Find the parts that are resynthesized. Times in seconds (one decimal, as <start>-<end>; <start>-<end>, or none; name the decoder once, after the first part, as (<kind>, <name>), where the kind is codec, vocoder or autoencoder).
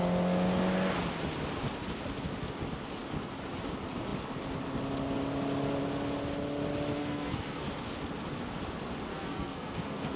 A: 7.0-7.7 (codec, SNAC); 9.1-10.2